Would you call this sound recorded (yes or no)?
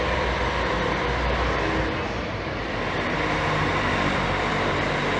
no